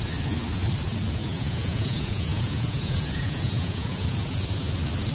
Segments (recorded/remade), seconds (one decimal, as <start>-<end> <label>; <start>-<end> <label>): 0.0-1.2 recorded; 1.2-4.3 remade; 4.3-5.1 recorded